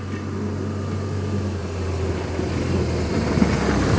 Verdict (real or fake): real